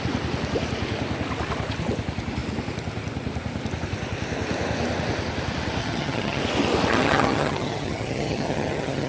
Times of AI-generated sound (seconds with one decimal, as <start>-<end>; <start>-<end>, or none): 5.8-6.4; 6.9-9.1